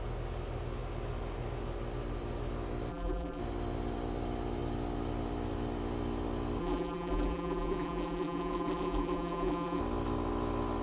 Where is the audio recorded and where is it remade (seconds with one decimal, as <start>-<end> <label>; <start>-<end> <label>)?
0.0-2.9 recorded; 2.9-3.4 remade; 3.4-6.6 recorded; 6.6-9.8 remade; 9.8-10.8 recorded